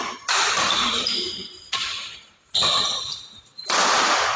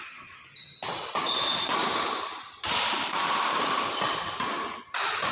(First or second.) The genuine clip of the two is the second